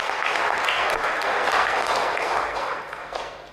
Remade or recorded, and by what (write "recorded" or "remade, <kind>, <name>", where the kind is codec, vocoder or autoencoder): remade, codec, SNAC